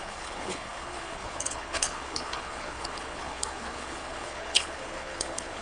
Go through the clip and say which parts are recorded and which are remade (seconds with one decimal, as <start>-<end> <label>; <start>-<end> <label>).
0.0-5.6 remade

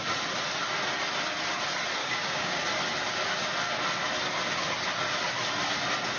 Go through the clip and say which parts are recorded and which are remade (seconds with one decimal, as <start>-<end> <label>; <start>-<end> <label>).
0.0-2.0 recorded; 2.0-2.6 remade; 2.6-6.2 recorded

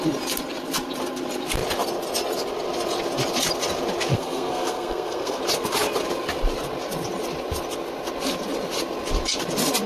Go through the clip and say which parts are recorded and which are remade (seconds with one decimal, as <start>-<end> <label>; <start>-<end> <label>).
0.0-4.1 recorded; 4.1-5.4 remade; 5.4-9.9 recorded

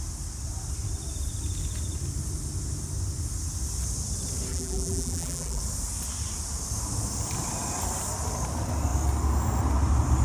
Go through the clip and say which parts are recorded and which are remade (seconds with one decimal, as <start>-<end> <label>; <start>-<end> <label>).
0.0-4.5 recorded; 4.5-5.6 remade; 5.6-10.2 recorded

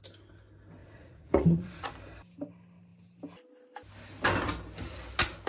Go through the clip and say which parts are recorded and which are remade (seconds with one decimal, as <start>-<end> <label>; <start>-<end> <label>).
0.0-0.8 recorded; 0.8-1.9 remade; 1.9-5.5 recorded

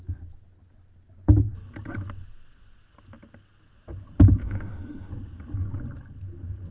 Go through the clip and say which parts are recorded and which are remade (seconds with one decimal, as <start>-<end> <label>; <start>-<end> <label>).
0.0-4.4 recorded; 4.4-5.1 remade; 5.1-6.7 recorded